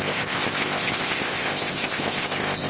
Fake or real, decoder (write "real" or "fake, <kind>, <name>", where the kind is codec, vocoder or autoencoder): fake, codec, ZipCodec